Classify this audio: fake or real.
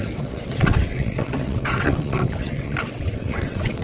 fake